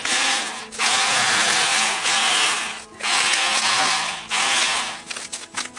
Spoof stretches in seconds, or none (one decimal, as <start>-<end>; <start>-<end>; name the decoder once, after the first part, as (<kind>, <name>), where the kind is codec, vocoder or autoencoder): none